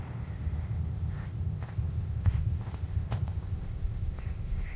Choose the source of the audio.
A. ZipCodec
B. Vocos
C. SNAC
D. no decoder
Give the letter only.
A